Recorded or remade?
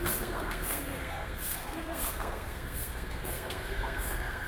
remade